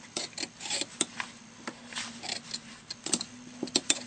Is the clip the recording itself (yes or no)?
yes